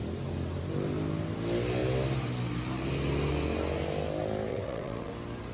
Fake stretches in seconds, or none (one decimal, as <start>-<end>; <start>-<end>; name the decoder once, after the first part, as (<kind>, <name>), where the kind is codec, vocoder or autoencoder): 4.5-5.1 (vocoder, WaveNeXt)